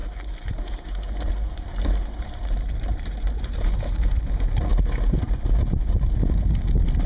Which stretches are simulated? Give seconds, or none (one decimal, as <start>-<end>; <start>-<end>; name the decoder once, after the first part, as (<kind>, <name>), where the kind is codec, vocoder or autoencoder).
0.0-4.2 (vocoder, BigVGAN v2)